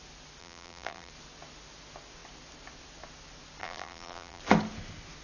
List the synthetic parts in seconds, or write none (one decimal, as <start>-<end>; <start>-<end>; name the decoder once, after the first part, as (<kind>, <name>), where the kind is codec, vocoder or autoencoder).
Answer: 0.4-1.1 (vocoder, BigVGAN v2); 3.6-4.4